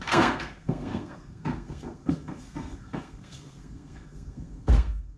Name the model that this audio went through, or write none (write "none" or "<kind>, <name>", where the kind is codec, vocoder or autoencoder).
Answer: codec, SNAC